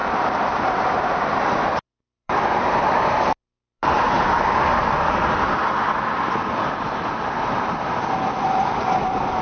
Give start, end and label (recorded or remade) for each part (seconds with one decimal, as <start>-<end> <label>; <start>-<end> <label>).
0.0-4.4 remade; 4.4-9.4 recorded